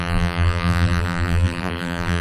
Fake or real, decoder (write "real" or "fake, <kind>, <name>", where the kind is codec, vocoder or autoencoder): fake, vocoder, BigVGAN v2